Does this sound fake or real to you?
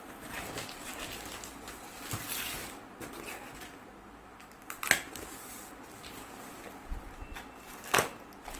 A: real